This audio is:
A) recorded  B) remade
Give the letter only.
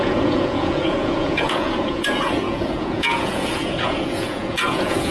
B